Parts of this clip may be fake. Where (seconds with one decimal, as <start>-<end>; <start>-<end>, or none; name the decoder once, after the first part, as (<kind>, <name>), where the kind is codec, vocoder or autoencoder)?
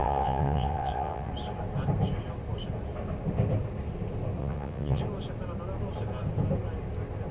0.0-1.3 (vocoder, WaveNeXt); 4.4-5.0